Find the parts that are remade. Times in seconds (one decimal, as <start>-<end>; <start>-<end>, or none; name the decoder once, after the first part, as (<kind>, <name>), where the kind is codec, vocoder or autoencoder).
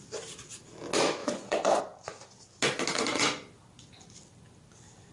1.2-1.8 (vocoder, Vocos); 2.9-3.4